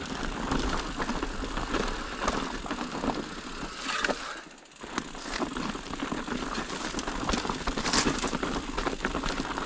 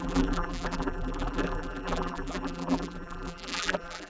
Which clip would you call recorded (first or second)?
first